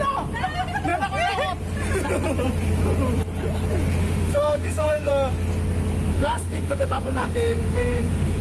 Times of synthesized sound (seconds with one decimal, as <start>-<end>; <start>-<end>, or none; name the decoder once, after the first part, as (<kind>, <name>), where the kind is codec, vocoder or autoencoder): 4.0-5.1 (autoencoder, DAC-VAE); 6.1-8.4